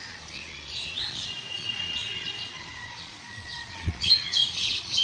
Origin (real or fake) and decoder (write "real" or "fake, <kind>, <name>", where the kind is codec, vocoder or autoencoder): fake, vocoder, Vocos